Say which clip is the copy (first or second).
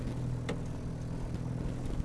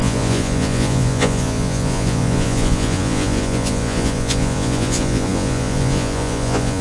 second